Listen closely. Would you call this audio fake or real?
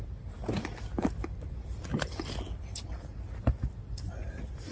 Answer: real